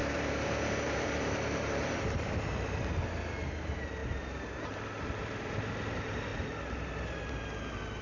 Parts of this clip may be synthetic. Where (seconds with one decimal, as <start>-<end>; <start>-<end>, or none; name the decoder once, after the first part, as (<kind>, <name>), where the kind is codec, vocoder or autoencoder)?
0.0-2.3 (vocoder, BigVGAN v2); 4.0-5.2